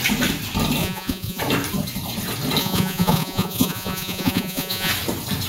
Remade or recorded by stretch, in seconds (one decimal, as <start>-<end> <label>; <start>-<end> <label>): 0.0-0.8 recorded; 0.8-1.4 remade; 1.4-2.6 recorded; 2.6-4.9 remade; 4.9-5.5 recorded